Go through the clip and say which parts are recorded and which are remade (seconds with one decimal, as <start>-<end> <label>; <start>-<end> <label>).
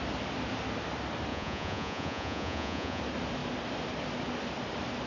0.0-1.3 recorded; 1.3-3.0 remade; 3.0-5.1 recorded